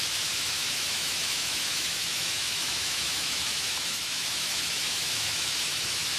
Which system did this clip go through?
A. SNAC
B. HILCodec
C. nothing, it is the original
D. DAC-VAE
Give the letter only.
D